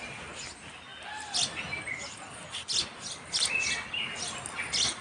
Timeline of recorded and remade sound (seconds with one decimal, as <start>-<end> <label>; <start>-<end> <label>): 0.0-5.0 recorded